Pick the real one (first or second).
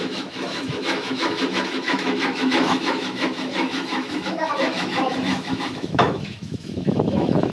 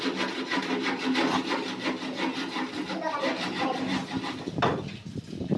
second